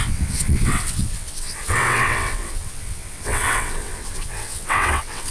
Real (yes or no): no